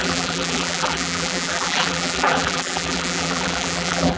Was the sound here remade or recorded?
remade